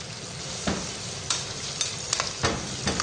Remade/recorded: recorded